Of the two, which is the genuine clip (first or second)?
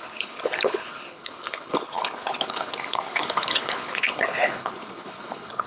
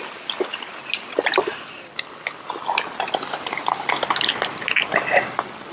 second